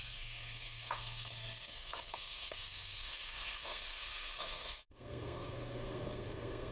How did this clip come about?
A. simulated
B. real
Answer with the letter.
A